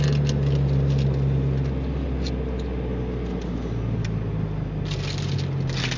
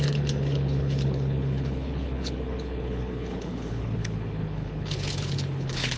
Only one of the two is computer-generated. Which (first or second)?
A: second